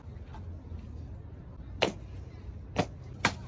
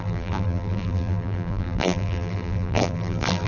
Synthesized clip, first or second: second